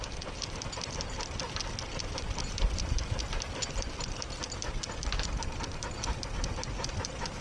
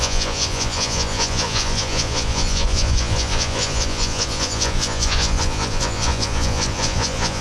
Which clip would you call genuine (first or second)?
first